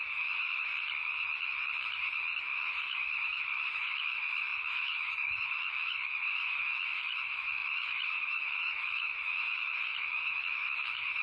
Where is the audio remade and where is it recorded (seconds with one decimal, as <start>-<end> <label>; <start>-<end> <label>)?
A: 0.0-0.7 remade; 0.7-2.4 recorded; 2.4-11.2 remade